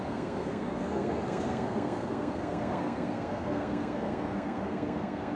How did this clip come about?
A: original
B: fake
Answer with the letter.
B